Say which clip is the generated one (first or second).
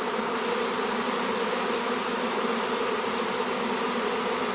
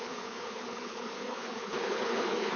second